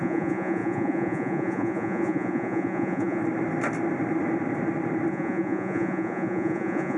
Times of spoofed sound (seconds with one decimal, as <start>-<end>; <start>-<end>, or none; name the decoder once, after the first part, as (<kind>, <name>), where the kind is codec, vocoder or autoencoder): 0.0-3.2 (vocoder, Vocos); 5.1-7.0